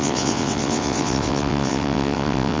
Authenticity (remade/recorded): remade